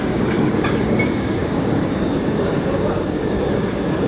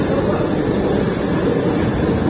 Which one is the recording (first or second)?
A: second